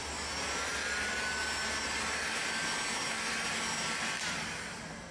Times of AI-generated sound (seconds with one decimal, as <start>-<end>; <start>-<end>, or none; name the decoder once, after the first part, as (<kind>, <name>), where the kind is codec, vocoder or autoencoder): none